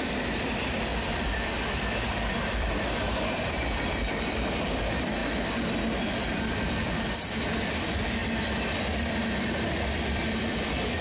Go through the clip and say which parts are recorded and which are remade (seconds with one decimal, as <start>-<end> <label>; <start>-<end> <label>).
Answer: 0.0-5.2 remade; 5.2-6.0 recorded; 6.0-8.2 remade; 8.2-9.1 recorded; 9.1-11.0 remade